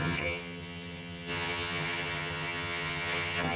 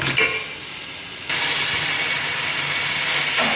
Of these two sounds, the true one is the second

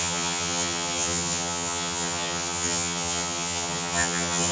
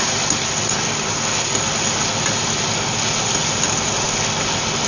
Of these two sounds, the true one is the second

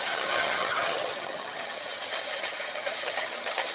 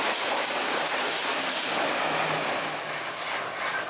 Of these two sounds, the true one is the second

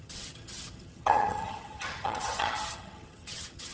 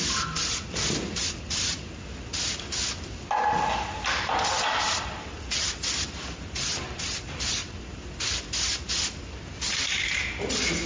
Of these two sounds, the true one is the second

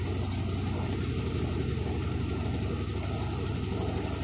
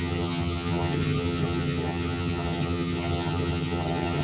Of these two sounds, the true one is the first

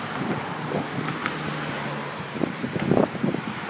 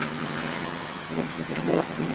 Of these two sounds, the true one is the first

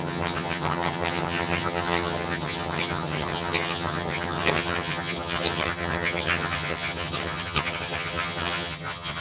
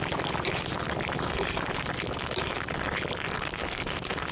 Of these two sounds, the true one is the second